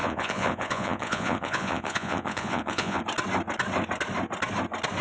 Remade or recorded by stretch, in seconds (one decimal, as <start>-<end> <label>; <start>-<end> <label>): 0.0-3.0 remade; 3.0-5.0 recorded